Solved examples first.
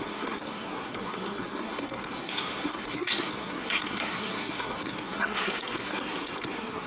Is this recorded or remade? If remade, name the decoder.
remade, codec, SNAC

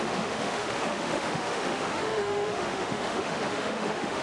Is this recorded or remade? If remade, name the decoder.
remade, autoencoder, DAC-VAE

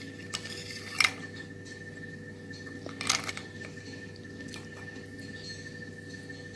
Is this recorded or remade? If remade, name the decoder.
recorded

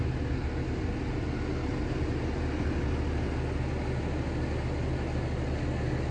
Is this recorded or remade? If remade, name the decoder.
recorded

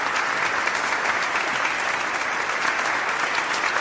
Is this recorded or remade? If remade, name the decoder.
recorded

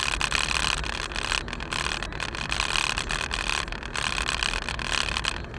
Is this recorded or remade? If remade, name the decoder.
recorded